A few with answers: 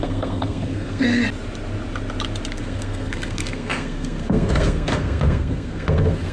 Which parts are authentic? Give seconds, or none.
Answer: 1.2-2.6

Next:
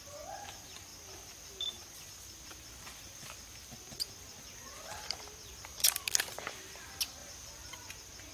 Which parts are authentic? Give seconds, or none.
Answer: 0.0-0.9; 2.1-4.6; 6.0-7.2; 7.9-8.3

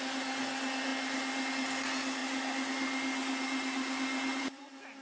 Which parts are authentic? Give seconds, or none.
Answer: 0.0-5.0

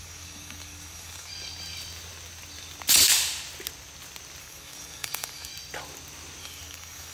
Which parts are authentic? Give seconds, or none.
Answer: 1.3-4.4; 5.5-6.4

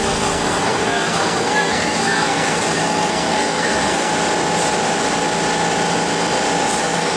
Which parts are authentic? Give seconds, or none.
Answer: 4.1-6.8

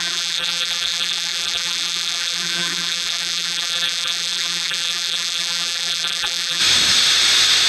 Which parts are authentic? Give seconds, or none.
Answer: 6.6-7.7

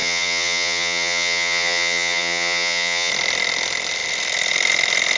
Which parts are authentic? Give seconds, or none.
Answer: 3.1-5.2

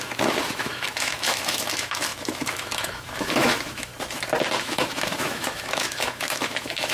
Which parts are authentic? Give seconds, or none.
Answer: 3.9-4.6